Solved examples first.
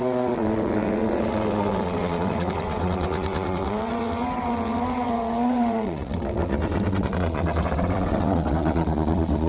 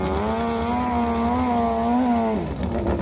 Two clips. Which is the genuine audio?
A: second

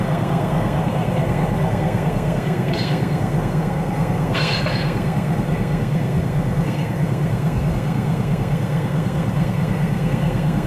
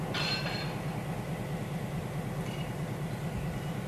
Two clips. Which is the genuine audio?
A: second